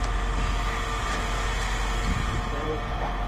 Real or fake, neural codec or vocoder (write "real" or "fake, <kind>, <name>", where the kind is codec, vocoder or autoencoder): real